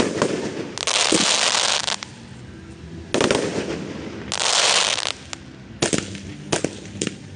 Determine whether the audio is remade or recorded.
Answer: recorded